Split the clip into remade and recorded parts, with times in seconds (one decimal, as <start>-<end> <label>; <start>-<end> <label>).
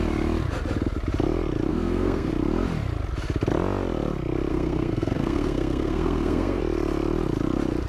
0.0-1.7 recorded; 1.7-2.3 remade; 2.3-4.5 recorded; 4.5-6.6 remade; 6.6-7.9 recorded